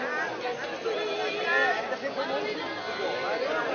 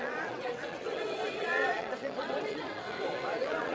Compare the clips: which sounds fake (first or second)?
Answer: second